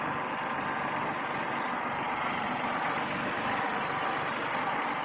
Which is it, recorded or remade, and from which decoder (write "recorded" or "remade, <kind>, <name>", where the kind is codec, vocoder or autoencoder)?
recorded